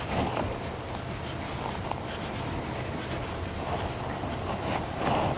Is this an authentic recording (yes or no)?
yes